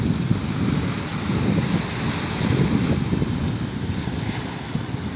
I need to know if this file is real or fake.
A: real